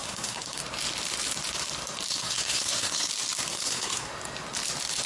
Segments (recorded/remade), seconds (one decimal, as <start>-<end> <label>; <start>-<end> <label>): 0.0-0.6 remade; 0.6-2.1 recorded; 2.1-3.1 remade; 3.1-3.5 recorded; 3.5-4.1 remade; 4.1-5.1 recorded